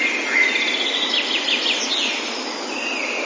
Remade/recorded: recorded